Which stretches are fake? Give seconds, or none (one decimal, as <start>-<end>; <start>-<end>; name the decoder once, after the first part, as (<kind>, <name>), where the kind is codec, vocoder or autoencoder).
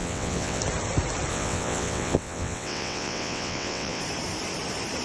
0.0-0.6 (vocoder, WaveNeXt); 1.3-4.0